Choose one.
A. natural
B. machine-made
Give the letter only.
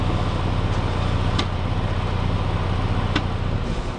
A